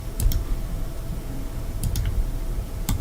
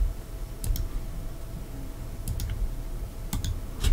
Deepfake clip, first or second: first